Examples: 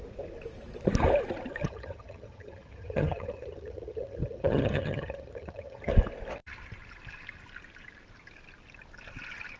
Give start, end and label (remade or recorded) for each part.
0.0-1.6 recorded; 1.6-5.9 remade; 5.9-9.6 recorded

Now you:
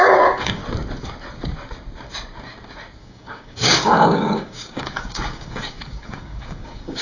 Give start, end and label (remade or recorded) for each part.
0.0-0.6 remade; 0.6-3.0 recorded; 3.0-7.0 remade

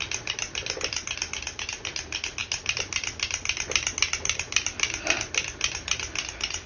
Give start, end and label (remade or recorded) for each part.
0.0-6.7 recorded

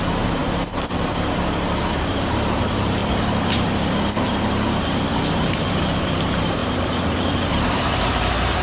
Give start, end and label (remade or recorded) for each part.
0.0-3.0 remade; 3.0-5.3 recorded; 5.3-8.6 remade